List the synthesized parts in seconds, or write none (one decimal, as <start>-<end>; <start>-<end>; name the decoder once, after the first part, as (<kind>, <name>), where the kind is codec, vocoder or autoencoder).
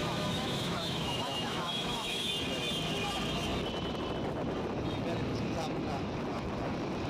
0.0-2.3 (autoencoder, DAC-VAE)